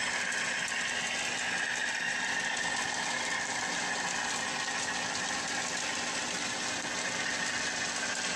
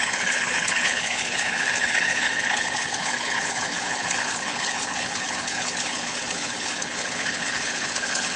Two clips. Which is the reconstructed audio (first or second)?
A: second